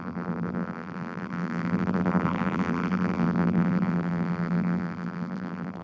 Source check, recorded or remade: remade